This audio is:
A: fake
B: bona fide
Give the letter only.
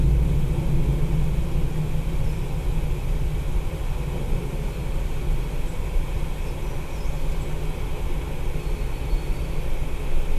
B